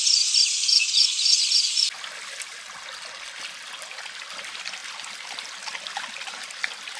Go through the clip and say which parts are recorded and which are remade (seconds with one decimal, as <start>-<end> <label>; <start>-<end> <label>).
0.0-0.7 recorded; 0.7-1.8 remade; 1.8-7.0 recorded